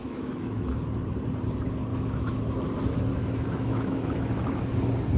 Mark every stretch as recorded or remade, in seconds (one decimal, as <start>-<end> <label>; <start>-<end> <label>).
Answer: 0.0-0.7 remade; 0.7-1.9 recorded; 1.9-2.4 remade; 2.4-3.1 recorded; 3.1-4.8 remade; 4.8-5.2 recorded